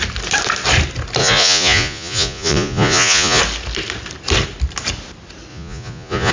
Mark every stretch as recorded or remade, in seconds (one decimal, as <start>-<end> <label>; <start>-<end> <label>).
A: 0.0-1.2 recorded; 1.2-3.4 remade; 3.4-5.5 recorded; 5.5-6.3 remade